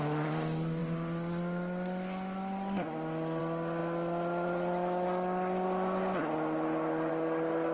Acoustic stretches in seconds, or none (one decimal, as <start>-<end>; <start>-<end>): 0.0-7.7